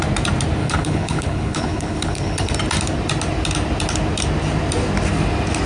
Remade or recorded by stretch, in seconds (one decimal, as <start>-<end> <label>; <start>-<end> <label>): 0.0-0.6 recorded; 0.6-2.5 remade; 2.5-5.7 recorded